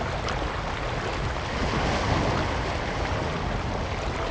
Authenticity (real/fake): real